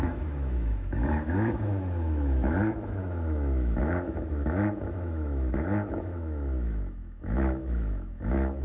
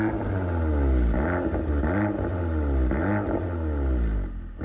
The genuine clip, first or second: second